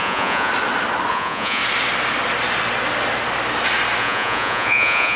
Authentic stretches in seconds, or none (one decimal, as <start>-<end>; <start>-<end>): 0.5-1.1; 1.6-4.0